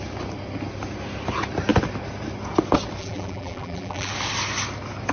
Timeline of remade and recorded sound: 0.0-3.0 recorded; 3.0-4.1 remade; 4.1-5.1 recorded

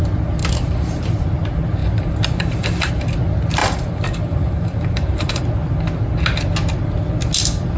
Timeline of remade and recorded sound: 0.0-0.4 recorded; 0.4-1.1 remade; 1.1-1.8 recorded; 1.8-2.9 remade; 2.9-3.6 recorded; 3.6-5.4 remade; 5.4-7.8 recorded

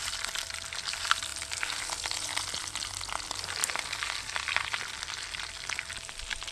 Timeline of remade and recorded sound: 0.0-3.6 recorded; 3.6-6.5 remade